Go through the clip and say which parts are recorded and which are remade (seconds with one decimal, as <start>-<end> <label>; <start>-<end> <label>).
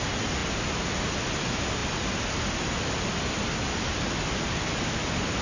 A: 0.0-5.4 recorded